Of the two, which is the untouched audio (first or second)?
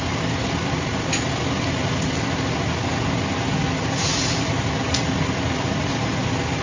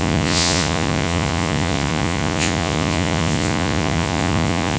first